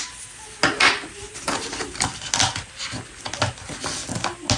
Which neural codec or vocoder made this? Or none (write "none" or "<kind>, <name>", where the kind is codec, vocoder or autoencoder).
none